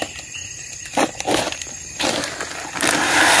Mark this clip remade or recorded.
remade